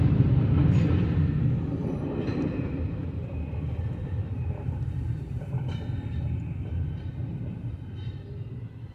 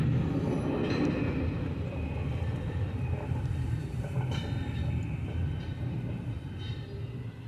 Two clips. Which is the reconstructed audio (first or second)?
first